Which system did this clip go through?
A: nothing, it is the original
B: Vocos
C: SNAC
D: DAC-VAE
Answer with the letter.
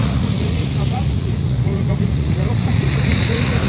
B